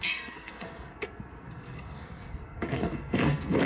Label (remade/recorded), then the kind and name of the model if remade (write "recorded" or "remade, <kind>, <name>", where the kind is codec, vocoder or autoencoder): remade, codec, SNAC